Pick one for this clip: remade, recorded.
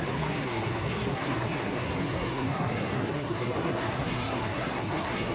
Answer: remade